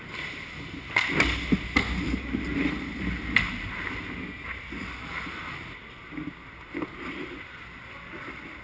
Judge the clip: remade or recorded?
recorded